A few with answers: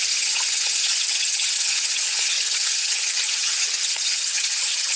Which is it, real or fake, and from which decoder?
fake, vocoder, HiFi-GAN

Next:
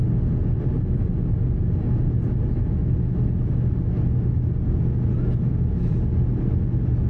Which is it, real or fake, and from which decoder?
real